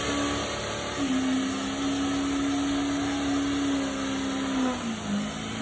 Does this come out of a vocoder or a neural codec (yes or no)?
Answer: no